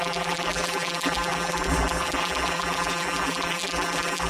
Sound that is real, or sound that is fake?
fake